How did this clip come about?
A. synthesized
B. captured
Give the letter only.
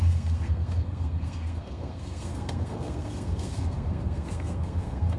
A